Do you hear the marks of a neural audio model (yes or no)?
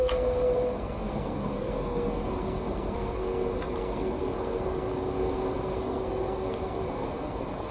yes